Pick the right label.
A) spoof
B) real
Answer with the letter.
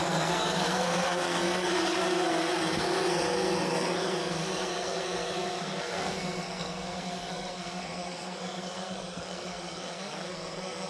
A